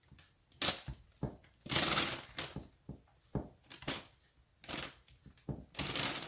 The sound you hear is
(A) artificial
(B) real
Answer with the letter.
B